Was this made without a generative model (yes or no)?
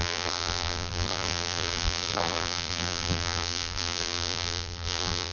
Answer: no